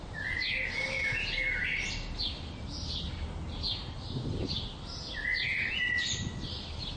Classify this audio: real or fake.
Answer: real